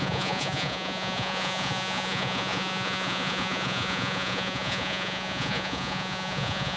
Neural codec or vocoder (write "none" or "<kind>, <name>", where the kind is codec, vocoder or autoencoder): vocoder, Vocos